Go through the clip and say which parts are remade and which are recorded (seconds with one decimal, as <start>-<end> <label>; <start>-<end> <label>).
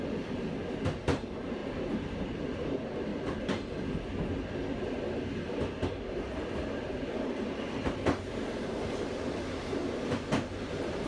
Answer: 0.0-3.1 remade; 3.1-6.2 recorded; 6.2-9.8 remade; 9.8-10.6 recorded; 10.6-11.1 remade